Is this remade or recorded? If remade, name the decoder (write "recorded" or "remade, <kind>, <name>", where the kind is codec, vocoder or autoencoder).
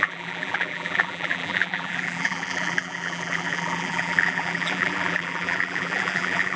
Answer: remade, vocoder, BigVGAN v2